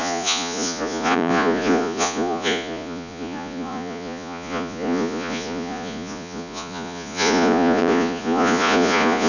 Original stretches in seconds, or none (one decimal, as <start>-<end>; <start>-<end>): none